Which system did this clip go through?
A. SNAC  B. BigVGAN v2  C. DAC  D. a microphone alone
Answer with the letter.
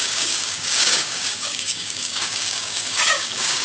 C